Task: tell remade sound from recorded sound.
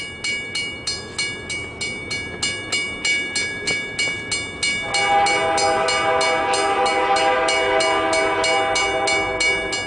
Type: recorded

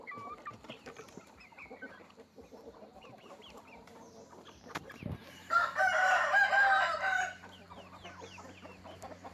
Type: remade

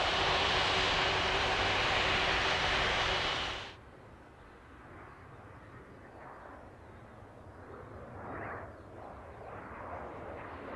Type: recorded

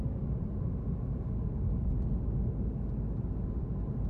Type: recorded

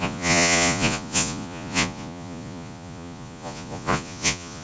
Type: remade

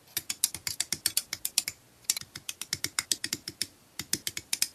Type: recorded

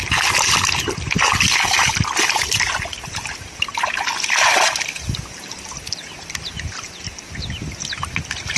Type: recorded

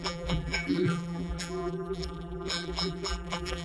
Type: remade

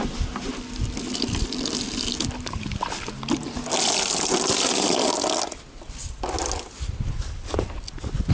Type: recorded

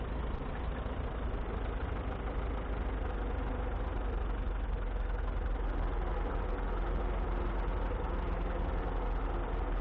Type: recorded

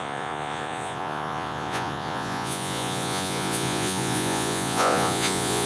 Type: remade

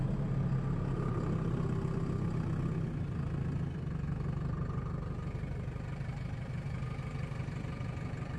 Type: recorded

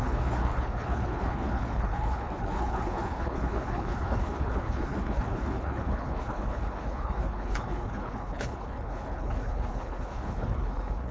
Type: remade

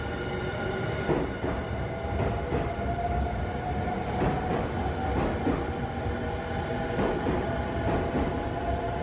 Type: recorded